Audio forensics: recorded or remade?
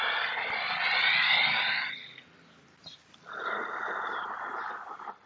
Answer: recorded